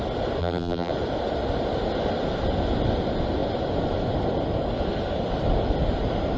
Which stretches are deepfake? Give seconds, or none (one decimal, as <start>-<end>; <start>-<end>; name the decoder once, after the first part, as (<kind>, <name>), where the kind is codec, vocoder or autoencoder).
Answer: 0.4-0.9 (vocoder, BigVGAN v2)